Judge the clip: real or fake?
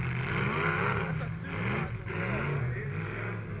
real